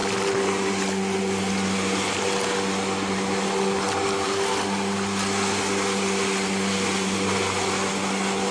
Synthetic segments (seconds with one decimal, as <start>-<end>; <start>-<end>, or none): none